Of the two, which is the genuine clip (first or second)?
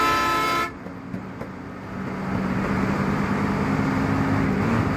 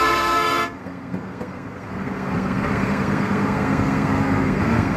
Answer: first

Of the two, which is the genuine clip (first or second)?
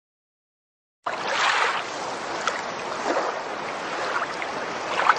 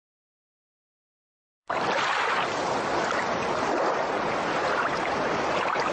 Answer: first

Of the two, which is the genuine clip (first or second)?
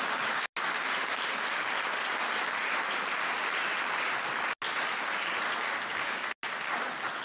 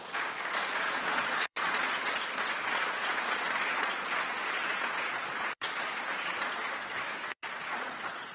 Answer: first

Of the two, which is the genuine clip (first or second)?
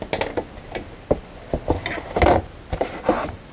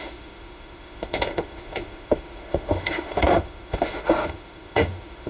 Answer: first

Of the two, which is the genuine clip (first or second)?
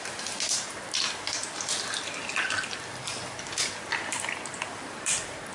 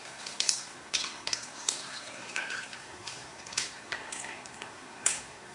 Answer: first